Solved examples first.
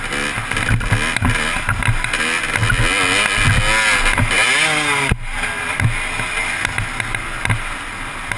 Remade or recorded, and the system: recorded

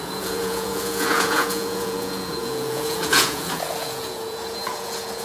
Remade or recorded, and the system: remade, vocoder, Vocos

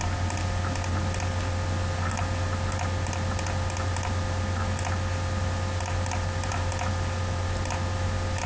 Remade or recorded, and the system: recorded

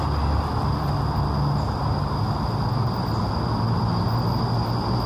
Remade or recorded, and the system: recorded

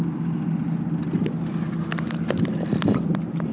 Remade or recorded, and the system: recorded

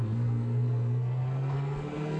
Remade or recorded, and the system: remade, codec, SNAC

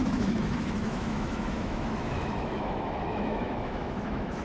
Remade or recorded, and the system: remade, autoencoder, DAC-VAE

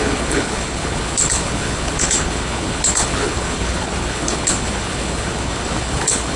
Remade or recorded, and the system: remade, codec, HILCodec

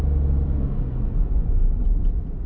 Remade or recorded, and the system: recorded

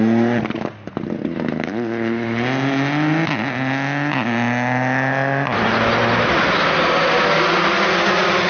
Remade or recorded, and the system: recorded